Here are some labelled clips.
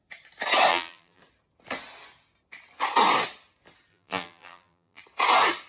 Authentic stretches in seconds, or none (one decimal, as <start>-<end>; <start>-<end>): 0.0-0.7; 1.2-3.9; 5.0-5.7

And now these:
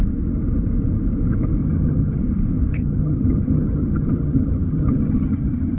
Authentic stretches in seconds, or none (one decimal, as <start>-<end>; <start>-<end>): 0.0-1.6; 2.2-2.7

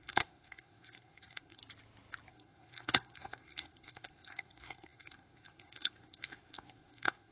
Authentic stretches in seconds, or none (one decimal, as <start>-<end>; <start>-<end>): 1.6-2.3